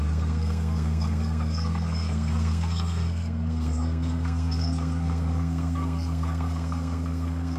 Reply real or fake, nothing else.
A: fake